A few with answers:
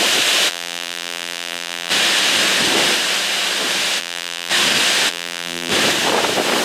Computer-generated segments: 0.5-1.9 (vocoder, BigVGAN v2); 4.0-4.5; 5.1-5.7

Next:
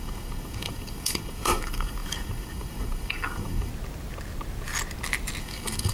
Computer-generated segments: 0.0-3.7 (codec, DAC); 5.4-5.9

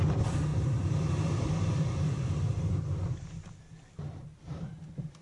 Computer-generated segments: 0.5-3.6 (vocoder, BigVGAN v2); 4.2-4.8